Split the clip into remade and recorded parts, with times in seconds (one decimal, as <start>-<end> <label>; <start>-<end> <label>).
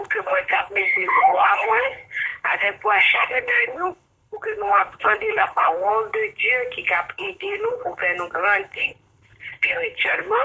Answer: 0.0-5.9 remade; 5.9-7.1 recorded; 7.1-8.0 remade; 8.0-8.6 recorded; 8.6-10.4 remade